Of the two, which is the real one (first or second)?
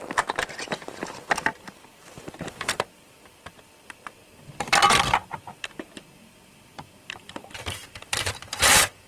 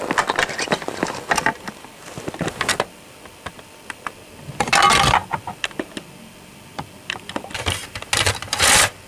second